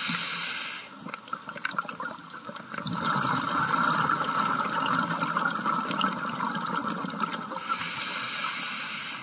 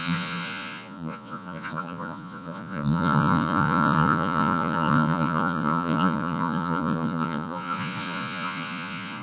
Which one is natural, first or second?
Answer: first